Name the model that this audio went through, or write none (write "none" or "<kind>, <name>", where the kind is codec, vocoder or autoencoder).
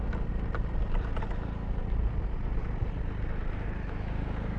none